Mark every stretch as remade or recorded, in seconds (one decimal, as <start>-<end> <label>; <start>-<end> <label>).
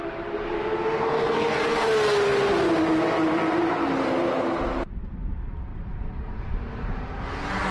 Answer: 0.0-0.6 remade; 0.6-5.7 recorded; 5.7-7.2 remade; 7.2-7.7 recorded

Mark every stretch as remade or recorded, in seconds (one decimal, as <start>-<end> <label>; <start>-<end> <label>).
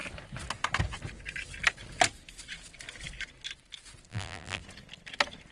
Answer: 0.0-4.1 recorded; 4.1-4.6 remade; 4.6-5.5 recorded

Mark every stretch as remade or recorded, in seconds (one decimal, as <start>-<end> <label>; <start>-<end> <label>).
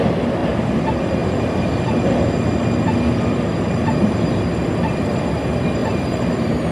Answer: 0.0-5.8 recorded; 5.8-6.7 remade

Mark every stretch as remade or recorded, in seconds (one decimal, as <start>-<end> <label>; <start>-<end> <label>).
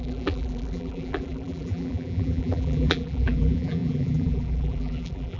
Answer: 0.0-5.4 remade